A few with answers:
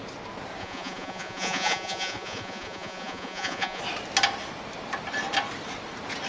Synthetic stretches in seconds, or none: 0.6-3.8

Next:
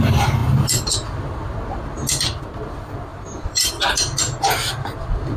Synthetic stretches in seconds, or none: 3.1-3.7

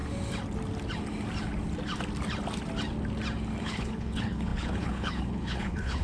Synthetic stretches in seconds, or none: 3.6-6.0

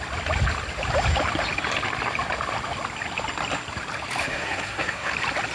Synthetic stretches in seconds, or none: 4.2-5.1

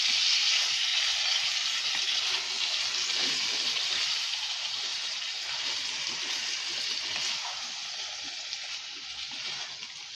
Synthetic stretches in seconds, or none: 0.9-1.8; 3.2-4.3; 4.9-5.6